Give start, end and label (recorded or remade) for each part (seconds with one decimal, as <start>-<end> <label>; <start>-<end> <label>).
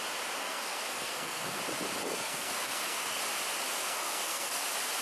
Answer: 0.0-0.4 recorded; 0.4-1.6 remade; 1.6-2.0 recorded; 2.0-3.2 remade; 3.2-3.8 recorded; 3.8-4.6 remade; 4.6-5.0 recorded